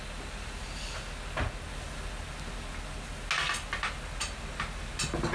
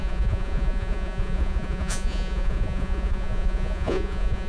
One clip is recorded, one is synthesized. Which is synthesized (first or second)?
second